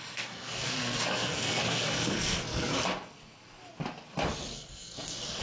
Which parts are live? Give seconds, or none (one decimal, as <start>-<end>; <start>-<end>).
2.7-4.5